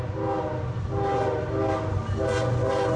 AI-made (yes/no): no